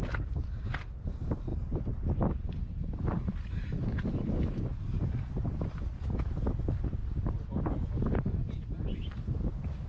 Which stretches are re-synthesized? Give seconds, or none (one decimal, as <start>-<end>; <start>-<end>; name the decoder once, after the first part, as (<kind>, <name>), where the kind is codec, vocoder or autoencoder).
none